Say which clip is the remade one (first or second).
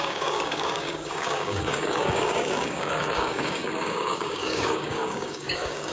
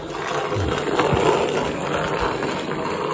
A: first